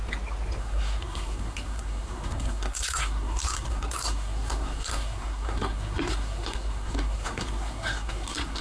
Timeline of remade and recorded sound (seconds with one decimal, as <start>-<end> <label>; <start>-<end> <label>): 0.0-0.6 recorded; 0.6-8.6 remade